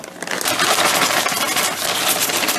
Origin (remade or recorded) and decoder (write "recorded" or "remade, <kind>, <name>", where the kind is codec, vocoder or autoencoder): recorded